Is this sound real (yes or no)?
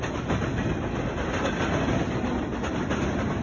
yes